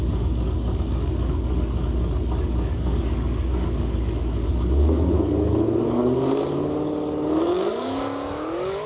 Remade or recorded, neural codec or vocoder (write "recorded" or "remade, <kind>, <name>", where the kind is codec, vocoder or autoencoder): remade, codec, DAC